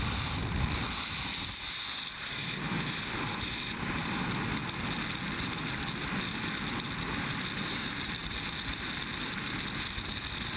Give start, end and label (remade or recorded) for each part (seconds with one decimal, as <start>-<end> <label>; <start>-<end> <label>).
0.0-10.6 recorded